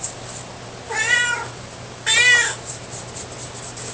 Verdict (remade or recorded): recorded